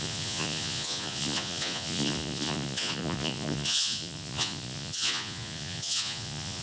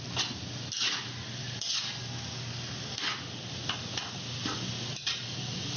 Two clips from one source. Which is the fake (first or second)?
first